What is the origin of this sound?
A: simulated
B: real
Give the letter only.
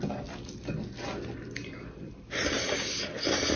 B